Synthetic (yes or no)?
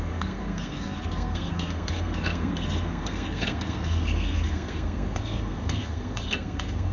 yes